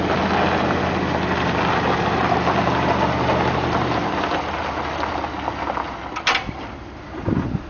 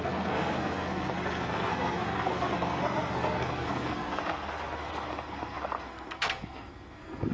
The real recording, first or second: first